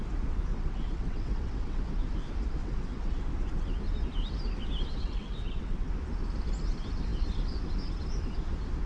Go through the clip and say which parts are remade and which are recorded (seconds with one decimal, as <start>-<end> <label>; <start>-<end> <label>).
0.0-0.5 recorded; 0.5-1.8 remade; 1.8-2.6 recorded; 2.6-3.2 remade; 3.2-5.0 recorded; 5.0-5.9 remade; 5.9-8.9 recorded